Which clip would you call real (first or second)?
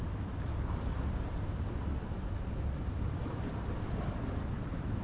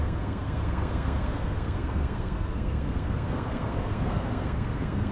first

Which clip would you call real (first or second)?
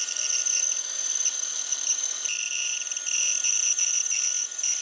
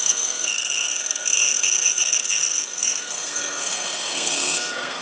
first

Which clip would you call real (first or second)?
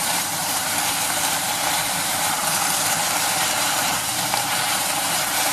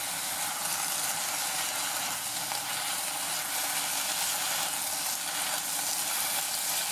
second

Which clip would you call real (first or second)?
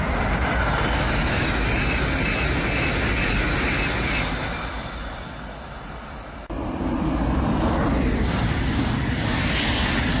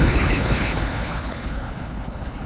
first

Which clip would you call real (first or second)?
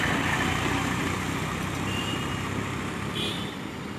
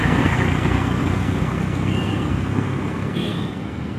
first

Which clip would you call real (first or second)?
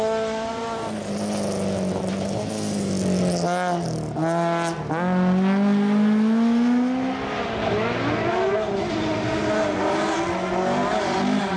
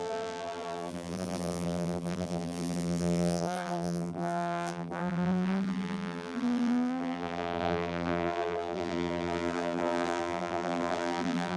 first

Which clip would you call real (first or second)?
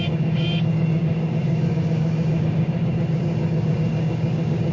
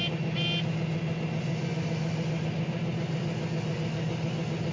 second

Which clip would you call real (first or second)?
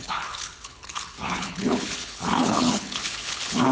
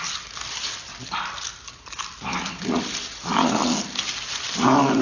second